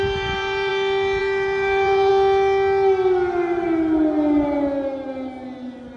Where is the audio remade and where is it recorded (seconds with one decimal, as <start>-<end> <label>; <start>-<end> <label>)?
0.0-0.7 remade; 0.7-1.2 recorded; 1.2-2.1 remade; 2.1-6.0 recorded